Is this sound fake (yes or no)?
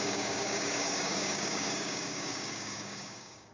yes